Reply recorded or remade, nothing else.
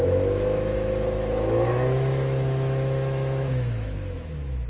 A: remade